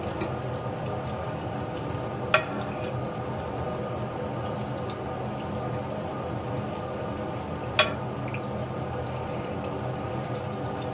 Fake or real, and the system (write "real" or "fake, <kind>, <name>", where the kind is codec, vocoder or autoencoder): real